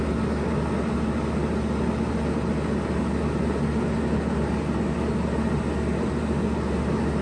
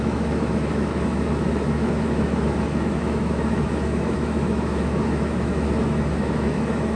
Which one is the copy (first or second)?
second